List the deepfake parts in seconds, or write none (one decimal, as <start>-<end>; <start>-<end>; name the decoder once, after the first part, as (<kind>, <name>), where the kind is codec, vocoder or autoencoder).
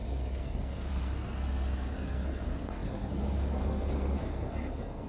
0.0-5.1 (codec, SNAC)